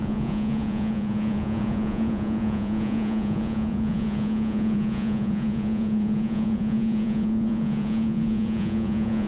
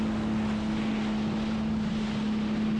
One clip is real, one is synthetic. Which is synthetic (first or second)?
first